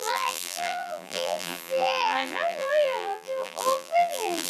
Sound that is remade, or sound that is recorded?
remade